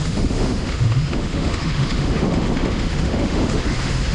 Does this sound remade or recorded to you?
remade